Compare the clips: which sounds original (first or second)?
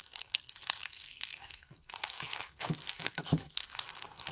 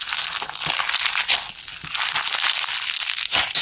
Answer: second